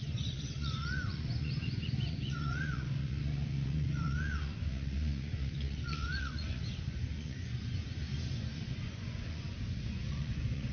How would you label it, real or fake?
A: fake